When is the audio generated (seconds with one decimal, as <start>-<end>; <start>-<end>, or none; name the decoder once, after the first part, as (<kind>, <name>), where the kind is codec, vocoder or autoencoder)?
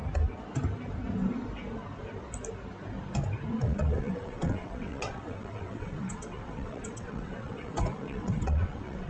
3.6-9.1 (vocoder, WaveNeXt)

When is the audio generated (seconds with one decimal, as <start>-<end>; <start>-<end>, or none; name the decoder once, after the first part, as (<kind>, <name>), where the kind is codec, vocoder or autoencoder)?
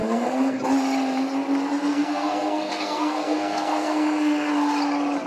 0.0-0.6 (codec, SNAC); 1.9-4.5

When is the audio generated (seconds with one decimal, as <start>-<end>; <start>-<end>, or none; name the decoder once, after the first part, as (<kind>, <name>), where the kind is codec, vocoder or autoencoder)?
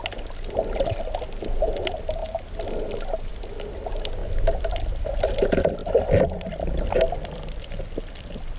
5.8-8.1 (vocoder, BigVGAN v2)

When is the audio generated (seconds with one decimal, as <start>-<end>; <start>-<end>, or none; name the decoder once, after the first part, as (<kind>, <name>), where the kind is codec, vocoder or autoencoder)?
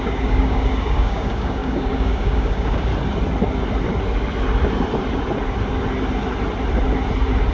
0.0-2.9 (codec, DAC)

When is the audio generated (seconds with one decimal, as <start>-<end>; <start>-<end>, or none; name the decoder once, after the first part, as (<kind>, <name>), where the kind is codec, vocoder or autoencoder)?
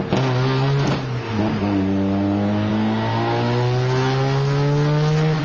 none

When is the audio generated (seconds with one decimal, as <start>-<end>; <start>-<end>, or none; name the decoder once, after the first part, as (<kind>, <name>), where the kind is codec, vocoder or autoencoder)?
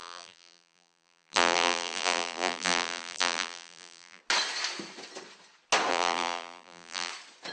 0.0-4.2 (vocoder, BigVGAN v2); 5.9-7.1